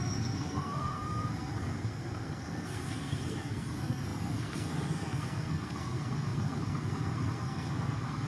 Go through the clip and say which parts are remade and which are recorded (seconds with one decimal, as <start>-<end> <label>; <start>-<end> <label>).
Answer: 0.0-8.3 remade